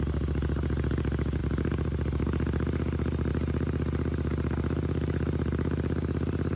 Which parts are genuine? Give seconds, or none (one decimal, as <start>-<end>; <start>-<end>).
0.0-6.6